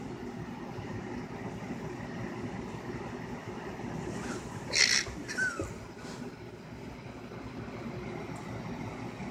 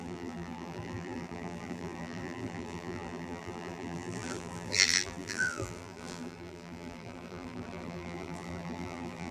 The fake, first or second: second